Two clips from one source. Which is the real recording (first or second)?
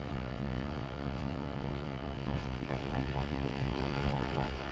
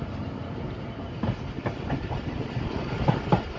second